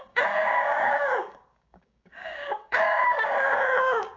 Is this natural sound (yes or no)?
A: no